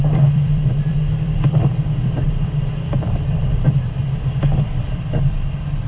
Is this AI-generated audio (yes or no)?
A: yes